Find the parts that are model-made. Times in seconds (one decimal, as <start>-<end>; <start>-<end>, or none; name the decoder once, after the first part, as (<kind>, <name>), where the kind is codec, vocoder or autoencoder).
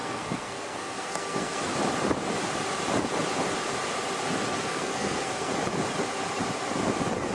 0.0-1.7 (codec, SNAC); 4.5-5.5